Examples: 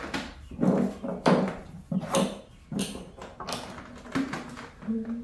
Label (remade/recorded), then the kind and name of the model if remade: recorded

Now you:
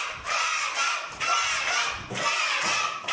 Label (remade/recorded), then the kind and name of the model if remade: recorded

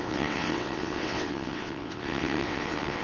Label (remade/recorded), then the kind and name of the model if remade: remade, vocoder, WaveNeXt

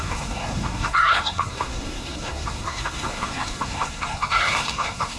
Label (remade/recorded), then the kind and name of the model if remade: remade, codec, SNAC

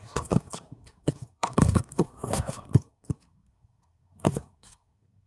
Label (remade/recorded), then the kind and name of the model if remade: remade, codec, SNAC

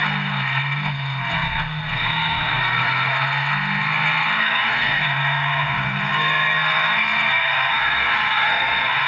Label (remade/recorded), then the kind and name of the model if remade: remade, codec, SNAC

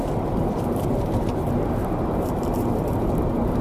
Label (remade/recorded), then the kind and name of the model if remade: remade, vocoder, BigVGAN v2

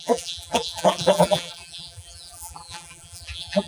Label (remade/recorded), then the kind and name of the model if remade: remade, vocoder, BigVGAN v2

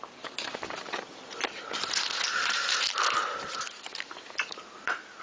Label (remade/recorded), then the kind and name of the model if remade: remade, vocoder, BigVGAN v2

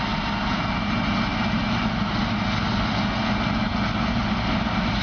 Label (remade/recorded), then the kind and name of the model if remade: recorded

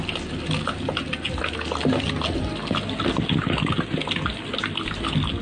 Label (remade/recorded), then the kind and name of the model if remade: recorded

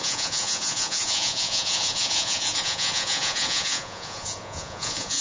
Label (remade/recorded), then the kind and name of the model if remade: remade, vocoder, Vocos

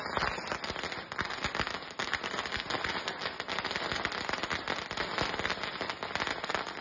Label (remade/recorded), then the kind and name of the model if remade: recorded